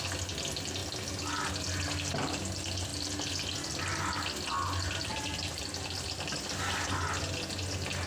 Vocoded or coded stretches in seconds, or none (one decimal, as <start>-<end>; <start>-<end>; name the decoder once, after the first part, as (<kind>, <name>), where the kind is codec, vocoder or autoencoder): 5.1-5.6 (vocoder, BigVGAN v2)